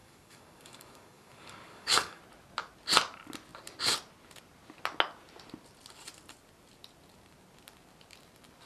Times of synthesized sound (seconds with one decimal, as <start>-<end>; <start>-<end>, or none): 0.0-2.2